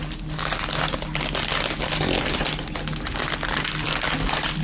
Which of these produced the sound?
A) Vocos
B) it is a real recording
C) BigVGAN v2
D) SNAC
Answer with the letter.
B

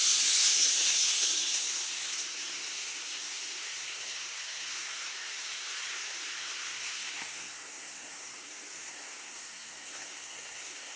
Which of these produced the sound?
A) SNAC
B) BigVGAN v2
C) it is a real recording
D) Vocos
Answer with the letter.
A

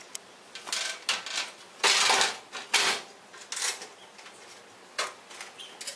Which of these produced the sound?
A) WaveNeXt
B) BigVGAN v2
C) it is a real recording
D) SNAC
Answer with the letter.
C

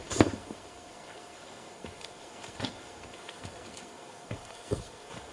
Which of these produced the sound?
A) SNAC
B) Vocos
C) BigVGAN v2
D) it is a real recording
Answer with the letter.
A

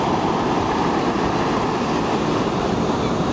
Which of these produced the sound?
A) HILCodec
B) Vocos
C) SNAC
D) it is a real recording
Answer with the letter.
D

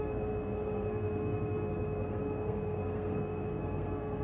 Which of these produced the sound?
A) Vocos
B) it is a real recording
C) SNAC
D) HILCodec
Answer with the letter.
C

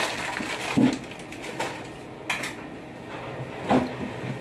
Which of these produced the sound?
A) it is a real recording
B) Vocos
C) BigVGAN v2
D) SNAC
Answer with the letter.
A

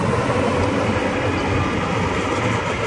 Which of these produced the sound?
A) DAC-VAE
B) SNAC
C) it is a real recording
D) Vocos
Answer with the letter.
C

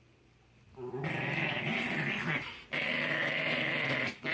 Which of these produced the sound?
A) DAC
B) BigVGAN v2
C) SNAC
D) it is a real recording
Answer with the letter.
D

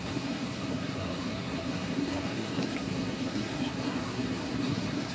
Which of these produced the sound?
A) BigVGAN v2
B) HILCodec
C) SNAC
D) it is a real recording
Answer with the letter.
C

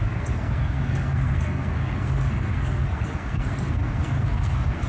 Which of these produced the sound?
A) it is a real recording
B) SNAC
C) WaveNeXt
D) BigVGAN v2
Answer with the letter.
B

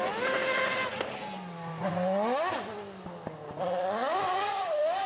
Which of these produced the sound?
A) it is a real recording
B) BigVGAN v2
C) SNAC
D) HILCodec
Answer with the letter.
A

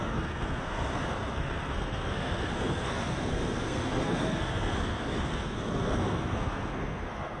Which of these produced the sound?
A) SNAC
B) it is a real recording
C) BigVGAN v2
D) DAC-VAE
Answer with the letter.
A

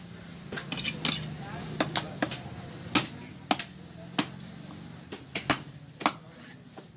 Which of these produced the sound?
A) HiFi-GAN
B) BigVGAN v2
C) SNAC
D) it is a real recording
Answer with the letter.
D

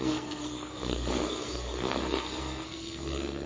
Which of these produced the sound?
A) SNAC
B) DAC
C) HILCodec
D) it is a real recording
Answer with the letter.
A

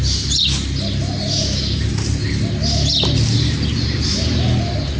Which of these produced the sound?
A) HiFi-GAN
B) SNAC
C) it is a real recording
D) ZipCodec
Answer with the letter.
C